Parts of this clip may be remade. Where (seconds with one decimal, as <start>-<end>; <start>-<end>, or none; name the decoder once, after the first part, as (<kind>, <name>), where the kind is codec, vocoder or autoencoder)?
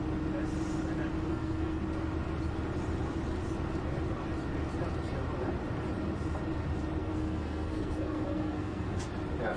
1.3-1.8 (codec, SNAC); 7.0-9.1